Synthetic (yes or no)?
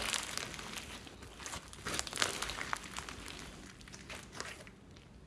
no